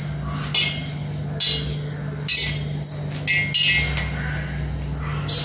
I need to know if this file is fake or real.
real